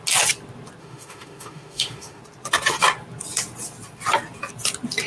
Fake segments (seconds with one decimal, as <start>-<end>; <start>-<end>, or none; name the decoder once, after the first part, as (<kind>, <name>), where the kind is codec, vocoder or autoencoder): 0.8-2.2 (autoencoder, DAC-VAE)